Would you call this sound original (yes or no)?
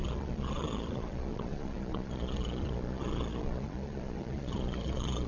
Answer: no